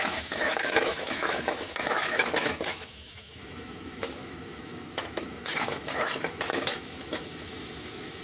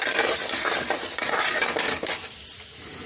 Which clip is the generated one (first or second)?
first